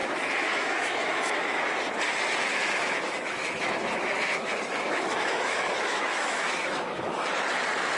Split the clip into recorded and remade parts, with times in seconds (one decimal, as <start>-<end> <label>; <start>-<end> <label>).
0.0-1.8 remade; 1.8-2.5 recorded; 2.5-7.3 remade; 7.3-8.0 recorded